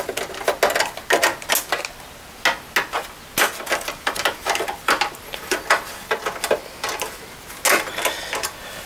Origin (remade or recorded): recorded